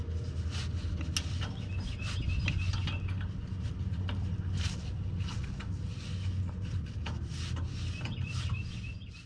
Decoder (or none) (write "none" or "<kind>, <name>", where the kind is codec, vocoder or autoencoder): none